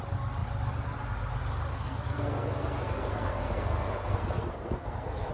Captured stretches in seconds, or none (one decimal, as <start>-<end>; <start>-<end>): 0.0-1.7